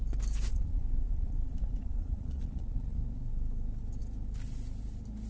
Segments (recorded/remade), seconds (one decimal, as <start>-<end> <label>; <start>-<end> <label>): 0.0-0.5 recorded; 0.5-3.0 remade; 3.0-5.3 recorded